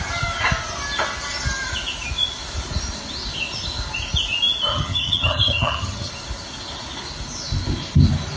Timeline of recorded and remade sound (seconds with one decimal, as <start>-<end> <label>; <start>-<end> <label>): 0.0-4.7 recorded; 4.7-6.1 remade; 6.1-8.4 recorded